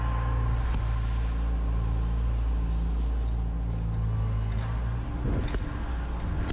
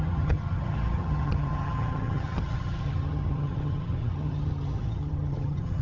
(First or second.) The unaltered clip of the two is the first